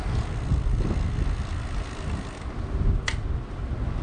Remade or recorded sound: recorded